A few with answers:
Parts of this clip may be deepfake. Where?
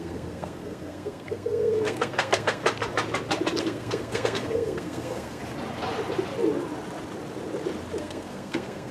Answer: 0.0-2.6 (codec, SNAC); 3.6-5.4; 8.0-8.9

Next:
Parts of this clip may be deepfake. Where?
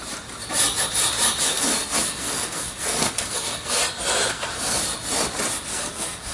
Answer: 1.4-3.8 (codec, SNAC); 4.3-4.8; 5.7-6.3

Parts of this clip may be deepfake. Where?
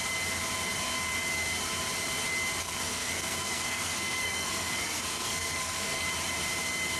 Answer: 2.6-6.0 (codec, SNAC)